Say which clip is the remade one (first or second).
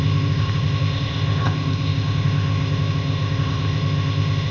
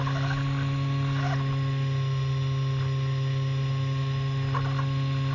first